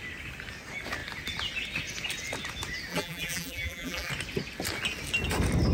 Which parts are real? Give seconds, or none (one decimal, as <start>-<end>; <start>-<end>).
0.0-2.9; 4.1-5.7